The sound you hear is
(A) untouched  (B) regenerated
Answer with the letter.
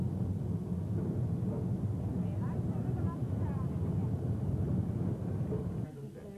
A